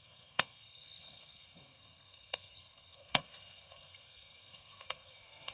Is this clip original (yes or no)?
no